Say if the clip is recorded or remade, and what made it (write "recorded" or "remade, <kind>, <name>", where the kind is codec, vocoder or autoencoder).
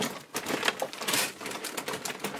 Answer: recorded